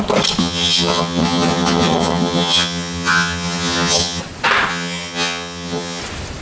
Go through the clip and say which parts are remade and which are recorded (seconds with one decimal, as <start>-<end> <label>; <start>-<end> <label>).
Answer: 0.0-0.4 recorded; 0.4-4.2 remade; 4.2-4.7 recorded; 4.7-6.0 remade; 6.0-6.4 recorded